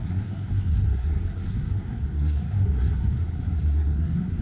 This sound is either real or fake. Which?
fake